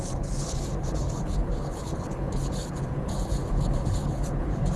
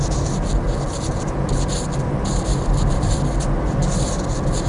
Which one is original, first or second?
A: second